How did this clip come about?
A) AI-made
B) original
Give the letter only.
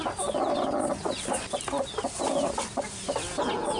B